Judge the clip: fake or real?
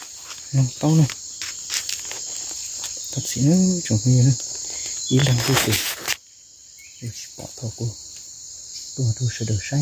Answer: real